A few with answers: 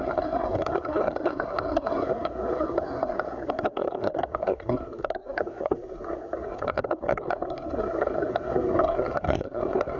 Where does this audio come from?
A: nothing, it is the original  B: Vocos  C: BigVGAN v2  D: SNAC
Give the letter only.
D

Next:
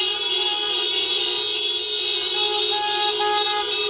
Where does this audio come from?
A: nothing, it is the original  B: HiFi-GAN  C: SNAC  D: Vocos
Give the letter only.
A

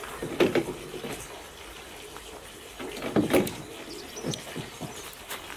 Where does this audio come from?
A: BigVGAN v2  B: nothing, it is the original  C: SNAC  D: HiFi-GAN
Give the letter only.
B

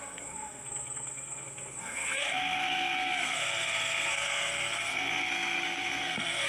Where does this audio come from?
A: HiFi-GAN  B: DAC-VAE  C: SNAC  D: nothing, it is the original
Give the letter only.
C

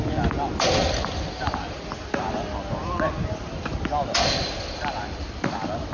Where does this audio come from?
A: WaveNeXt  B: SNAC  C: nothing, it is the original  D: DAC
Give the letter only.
C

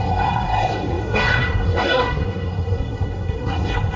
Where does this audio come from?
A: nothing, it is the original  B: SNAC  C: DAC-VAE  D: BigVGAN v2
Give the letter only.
B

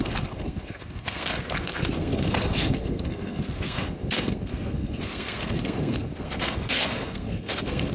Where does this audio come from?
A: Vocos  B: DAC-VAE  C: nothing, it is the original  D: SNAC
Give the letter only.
D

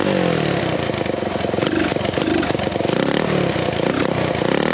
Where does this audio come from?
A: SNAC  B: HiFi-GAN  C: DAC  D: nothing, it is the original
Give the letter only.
D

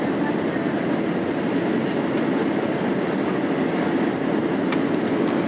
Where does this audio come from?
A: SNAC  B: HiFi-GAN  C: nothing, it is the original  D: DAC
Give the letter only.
C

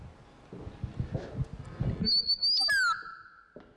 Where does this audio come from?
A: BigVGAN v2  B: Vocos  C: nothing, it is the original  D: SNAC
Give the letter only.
C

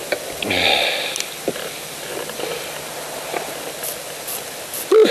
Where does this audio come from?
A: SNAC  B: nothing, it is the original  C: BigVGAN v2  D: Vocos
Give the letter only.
B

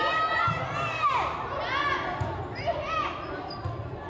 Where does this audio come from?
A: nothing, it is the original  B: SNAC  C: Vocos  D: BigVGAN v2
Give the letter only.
A